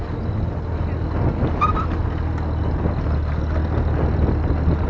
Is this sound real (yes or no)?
yes